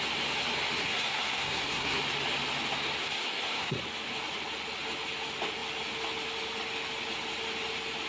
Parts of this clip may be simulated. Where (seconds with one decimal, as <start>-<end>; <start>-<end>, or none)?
0.8-2.0; 3.0-3.8